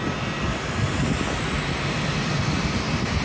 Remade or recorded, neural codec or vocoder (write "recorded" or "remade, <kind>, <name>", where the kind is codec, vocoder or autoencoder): recorded